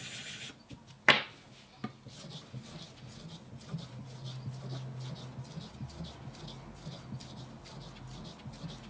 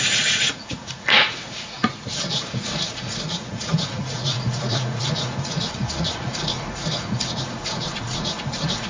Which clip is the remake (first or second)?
second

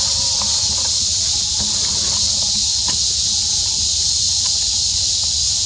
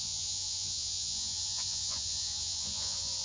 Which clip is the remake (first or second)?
second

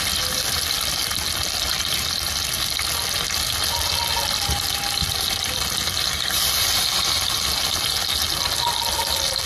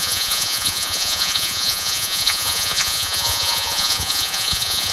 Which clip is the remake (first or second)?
second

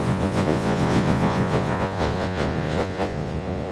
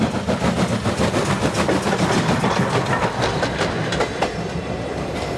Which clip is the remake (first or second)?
first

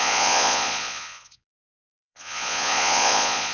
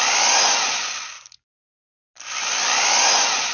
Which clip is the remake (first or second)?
first